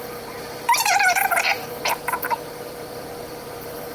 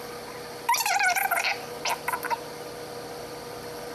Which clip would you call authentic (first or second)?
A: second